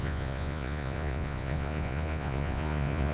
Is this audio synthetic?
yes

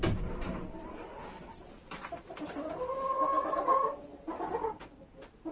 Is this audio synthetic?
no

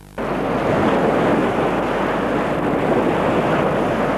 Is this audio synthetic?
no